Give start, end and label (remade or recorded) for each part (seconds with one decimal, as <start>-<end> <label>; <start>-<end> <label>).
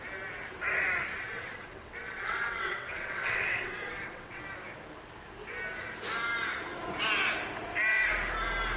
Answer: 0.0-1.1 recorded; 1.1-4.4 remade; 4.4-8.8 recorded